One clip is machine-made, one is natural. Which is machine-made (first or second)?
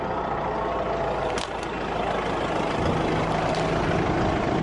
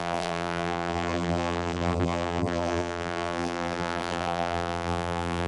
second